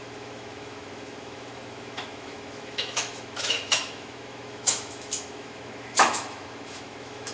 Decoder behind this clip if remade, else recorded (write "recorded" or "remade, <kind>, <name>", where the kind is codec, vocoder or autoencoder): remade, autoencoder, DAC-VAE